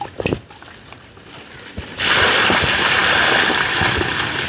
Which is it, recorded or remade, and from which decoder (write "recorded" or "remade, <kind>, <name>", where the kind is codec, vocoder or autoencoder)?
recorded